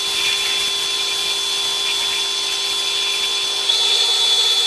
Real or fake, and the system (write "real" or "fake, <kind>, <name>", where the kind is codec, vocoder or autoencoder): real